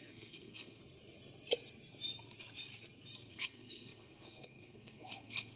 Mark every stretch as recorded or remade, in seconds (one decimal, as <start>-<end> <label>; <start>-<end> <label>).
0.0-0.8 remade; 0.8-3.3 recorded; 3.3-5.6 remade